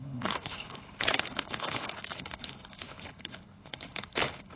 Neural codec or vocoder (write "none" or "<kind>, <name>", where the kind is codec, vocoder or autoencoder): codec, HILCodec